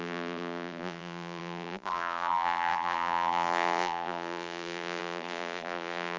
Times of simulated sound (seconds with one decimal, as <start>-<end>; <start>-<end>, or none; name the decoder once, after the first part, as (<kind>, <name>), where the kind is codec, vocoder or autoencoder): 0.0-6.2 (vocoder, BigVGAN v2)